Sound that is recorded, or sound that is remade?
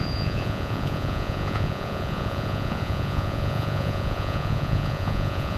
remade